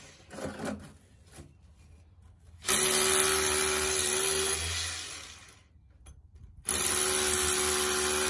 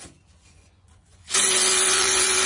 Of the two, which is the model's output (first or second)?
second